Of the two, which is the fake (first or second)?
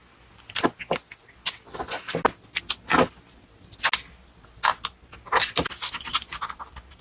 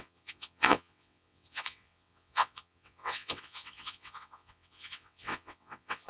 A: second